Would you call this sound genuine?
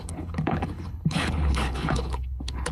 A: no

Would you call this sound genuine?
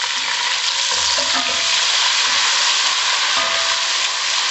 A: yes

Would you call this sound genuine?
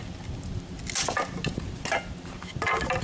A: yes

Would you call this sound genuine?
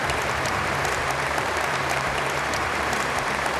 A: no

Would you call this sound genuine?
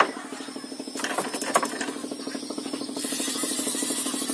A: yes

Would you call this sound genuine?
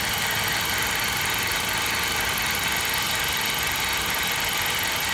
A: yes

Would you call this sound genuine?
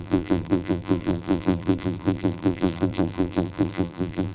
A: no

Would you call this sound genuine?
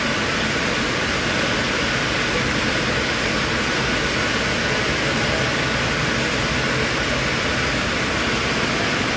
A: yes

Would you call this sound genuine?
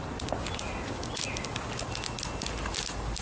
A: yes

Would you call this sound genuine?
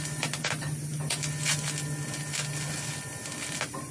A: yes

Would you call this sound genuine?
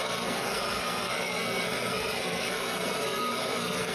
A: no